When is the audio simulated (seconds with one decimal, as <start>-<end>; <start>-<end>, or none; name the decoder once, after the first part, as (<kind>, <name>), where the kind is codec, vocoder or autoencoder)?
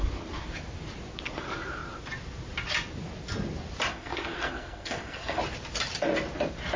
3.9-5.4 (codec, SNAC)